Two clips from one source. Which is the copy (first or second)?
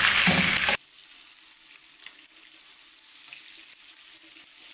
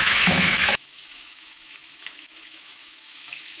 second